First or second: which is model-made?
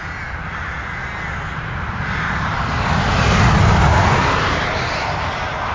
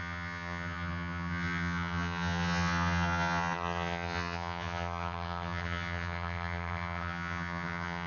second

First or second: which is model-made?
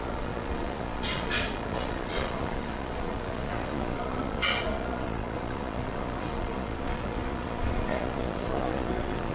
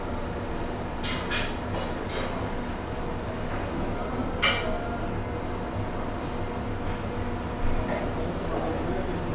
first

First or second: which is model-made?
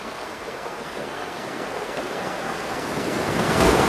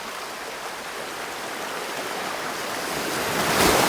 first